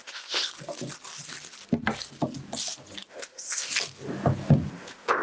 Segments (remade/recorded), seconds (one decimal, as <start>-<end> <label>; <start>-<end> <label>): 0.0-0.5 remade; 0.5-3.1 recorded; 3.1-3.7 remade; 3.7-4.7 recorded; 4.7-5.2 remade